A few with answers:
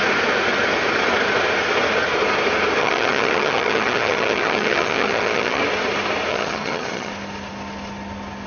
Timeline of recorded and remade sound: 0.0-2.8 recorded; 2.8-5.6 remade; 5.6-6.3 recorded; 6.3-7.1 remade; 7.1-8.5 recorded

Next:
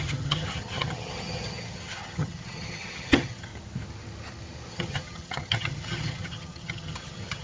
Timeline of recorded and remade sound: 0.0-3.5 remade; 3.5-4.7 recorded; 4.7-7.4 remade

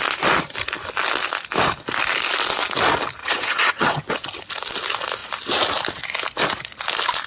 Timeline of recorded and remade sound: 0.0-3.2 recorded; 3.2-4.1 remade; 4.1-7.3 recorded